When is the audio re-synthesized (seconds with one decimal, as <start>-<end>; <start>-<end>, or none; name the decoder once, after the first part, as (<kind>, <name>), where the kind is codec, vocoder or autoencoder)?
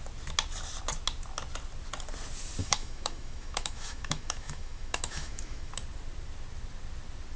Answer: 2.6-5.7 (autoencoder, DAC-VAE)